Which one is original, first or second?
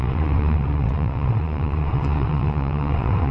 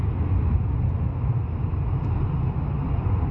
second